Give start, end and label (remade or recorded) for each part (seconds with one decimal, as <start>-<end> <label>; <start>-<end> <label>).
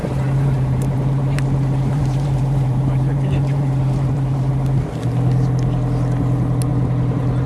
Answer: 0.0-4.5 remade; 4.5-7.5 recorded